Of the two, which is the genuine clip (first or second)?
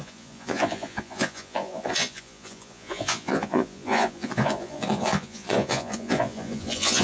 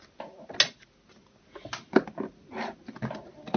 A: second